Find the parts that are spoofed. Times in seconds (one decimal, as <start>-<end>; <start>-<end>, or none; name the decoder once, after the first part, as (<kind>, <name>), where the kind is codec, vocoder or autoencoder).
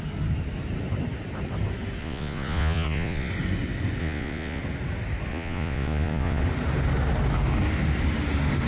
2.0-3.3 (vocoder, Vocos); 4.0-4.6; 5.3-6.4